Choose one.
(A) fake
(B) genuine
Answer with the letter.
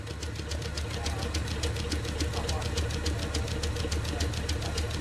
B